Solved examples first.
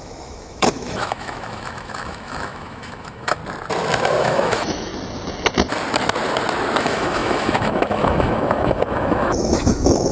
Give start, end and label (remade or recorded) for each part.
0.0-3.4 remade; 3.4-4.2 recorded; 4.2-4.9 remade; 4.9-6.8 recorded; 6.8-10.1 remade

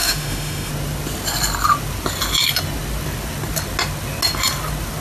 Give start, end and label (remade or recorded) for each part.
0.0-0.7 remade; 0.7-5.0 recorded

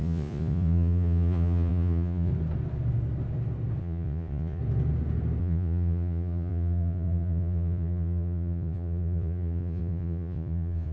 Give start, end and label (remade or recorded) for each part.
0.0-2.3 remade; 2.3-3.8 recorded; 3.8-4.6 remade; 4.6-5.4 recorded; 5.4-10.9 remade

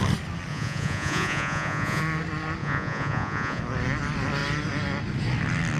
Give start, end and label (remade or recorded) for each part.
0.0-0.5 recorded; 0.5-2.0 remade; 2.0-2.6 recorded; 2.6-3.6 remade; 3.6-5.8 recorded

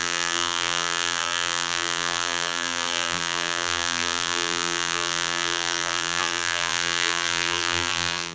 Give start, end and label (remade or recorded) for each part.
0.0-8.3 remade

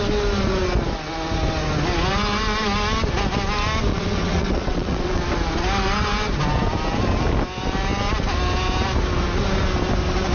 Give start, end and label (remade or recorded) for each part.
0.0-3.9 recorded; 3.9-5.2 remade; 5.2-10.3 recorded

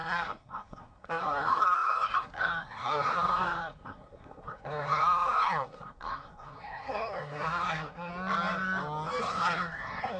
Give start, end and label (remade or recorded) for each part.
0.0-8.1 remade; 8.1-9.2 recorded; 9.2-10.2 remade